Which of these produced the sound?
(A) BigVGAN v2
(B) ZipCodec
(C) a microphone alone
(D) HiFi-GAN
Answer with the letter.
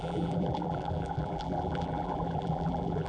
A